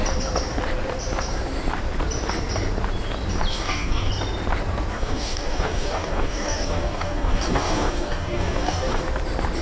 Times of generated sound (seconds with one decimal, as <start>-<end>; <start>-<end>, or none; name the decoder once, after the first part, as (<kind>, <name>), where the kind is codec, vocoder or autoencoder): 3.5-4.1 (codec, DAC); 4.9-9.0

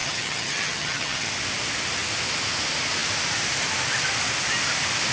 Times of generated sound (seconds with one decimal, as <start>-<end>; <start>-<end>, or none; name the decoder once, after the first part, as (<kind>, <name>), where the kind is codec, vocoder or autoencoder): 0.0-1.3 (vocoder, HiFi-GAN)

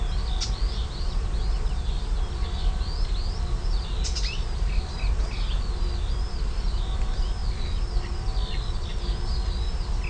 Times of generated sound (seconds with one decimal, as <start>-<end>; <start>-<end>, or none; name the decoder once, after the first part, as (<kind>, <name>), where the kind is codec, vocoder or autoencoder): none

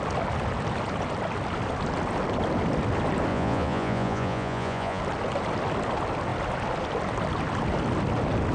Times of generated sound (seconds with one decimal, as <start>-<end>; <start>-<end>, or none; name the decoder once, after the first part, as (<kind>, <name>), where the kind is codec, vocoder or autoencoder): 3.3-5.0 (vocoder, Vocos)

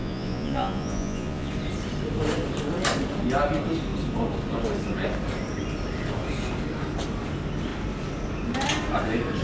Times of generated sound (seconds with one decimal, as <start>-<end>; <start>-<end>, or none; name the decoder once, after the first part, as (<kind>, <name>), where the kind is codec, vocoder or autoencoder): 0.0-1.5 (vocoder, Vocos)